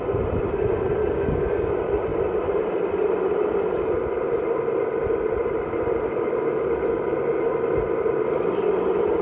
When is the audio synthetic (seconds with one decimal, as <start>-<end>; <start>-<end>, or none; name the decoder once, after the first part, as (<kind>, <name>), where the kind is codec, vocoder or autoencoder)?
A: 1.0-1.7 (codec, DAC)